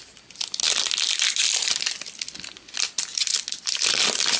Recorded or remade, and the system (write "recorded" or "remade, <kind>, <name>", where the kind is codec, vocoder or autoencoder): recorded